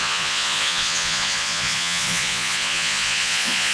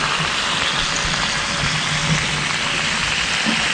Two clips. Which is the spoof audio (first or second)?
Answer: first